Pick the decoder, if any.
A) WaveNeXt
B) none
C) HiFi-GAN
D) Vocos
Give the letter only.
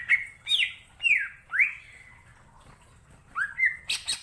B